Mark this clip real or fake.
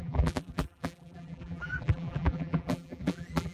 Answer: fake